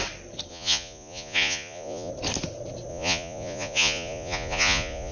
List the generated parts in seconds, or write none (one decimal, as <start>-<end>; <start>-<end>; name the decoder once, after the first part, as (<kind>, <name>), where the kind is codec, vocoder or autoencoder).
0.5-2.1 (vocoder, Vocos); 2.9-5.1